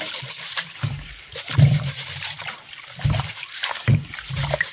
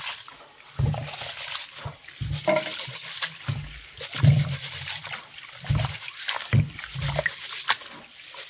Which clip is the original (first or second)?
second